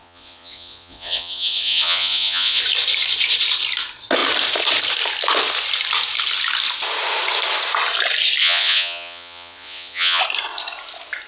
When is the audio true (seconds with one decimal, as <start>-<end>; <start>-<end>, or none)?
2.6-8.4; 10.2-11.3